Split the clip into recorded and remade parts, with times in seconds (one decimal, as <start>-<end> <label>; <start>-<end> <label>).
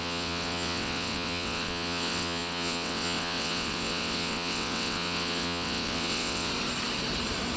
0.0-6.5 remade; 6.5-7.6 recorded